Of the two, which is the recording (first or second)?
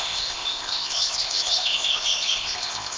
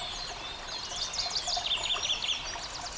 second